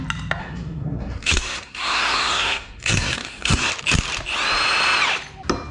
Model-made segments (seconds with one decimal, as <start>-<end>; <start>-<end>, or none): 0.4-3.7